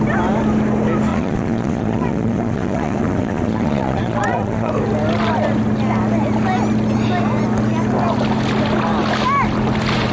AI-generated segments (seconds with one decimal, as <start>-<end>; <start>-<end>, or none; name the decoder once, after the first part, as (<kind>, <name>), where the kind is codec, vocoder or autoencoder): 1.1-4.7 (vocoder, Vocos)